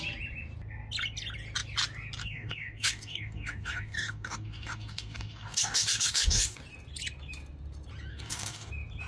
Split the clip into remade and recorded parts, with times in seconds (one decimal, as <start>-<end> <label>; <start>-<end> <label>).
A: 0.0-2.2 recorded; 2.2-6.6 remade; 6.6-8.1 recorded; 8.1-8.7 remade; 8.7-9.1 recorded